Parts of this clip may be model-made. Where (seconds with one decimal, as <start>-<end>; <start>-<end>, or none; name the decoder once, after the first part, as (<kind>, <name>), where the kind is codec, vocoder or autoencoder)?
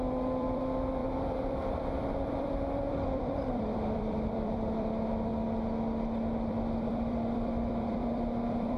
0.0-5.3 (vocoder, BigVGAN v2); 6.5-8.8